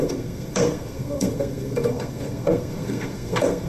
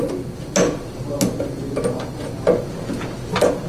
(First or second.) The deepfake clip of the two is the first